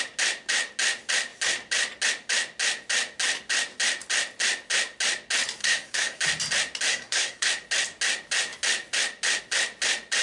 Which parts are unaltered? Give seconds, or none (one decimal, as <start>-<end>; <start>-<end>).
0.0-5.6; 6.2-6.9; 7.5-10.2